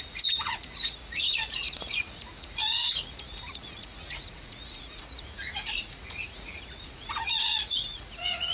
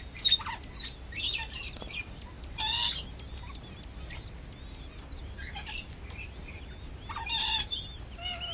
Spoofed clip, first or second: first